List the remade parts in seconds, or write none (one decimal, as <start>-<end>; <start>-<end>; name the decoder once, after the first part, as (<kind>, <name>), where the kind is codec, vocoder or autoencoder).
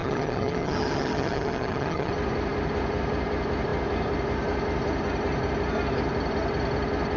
0.0-2.1 (vocoder, HiFi-GAN)